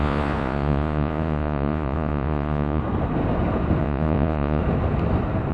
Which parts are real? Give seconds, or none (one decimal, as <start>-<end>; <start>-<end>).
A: 2.8-3.8; 4.6-5.5